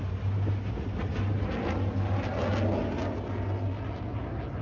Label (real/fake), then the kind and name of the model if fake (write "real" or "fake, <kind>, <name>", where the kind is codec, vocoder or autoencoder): real